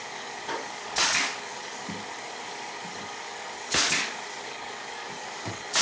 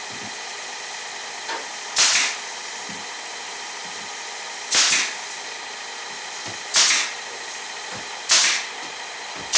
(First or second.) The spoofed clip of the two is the first